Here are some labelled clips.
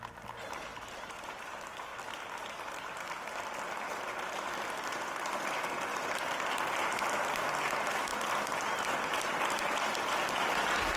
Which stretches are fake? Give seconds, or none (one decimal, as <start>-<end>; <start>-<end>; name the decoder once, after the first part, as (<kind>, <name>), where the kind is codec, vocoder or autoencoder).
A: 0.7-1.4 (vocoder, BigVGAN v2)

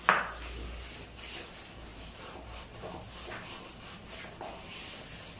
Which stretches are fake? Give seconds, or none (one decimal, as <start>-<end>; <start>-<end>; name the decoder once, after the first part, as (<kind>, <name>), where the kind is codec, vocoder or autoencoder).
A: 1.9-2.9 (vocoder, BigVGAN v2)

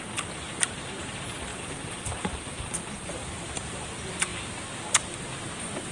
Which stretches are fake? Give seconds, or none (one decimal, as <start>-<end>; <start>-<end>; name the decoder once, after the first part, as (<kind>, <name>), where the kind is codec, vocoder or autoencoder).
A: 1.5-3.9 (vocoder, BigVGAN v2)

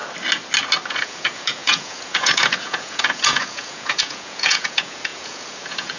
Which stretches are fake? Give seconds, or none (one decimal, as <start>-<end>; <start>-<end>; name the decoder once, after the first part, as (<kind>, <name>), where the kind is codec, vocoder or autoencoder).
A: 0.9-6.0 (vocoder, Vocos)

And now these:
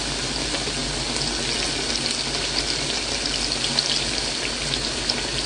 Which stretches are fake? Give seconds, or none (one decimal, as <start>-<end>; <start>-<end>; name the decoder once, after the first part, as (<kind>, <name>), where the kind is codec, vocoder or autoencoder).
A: none